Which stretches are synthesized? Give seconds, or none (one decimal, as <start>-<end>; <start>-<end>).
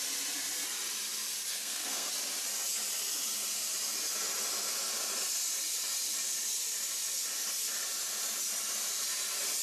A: 1.5-2.1